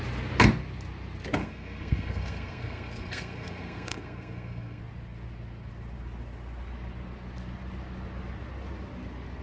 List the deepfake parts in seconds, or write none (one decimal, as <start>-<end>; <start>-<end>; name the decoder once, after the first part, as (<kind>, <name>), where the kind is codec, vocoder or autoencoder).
1.4-4.8 (codec, SNAC)